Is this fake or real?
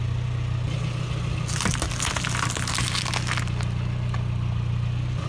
real